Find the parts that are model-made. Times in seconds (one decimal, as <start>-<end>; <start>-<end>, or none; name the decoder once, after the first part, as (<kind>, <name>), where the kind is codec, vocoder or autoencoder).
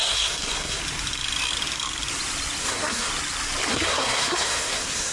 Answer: 0.0-0.8 (codec, SNAC); 2.6-3.1; 3.7-5.1